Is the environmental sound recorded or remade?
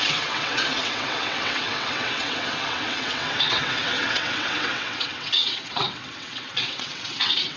remade